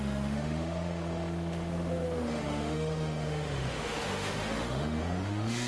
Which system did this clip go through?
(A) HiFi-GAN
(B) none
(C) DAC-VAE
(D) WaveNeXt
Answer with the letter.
C